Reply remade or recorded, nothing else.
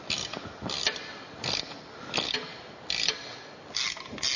recorded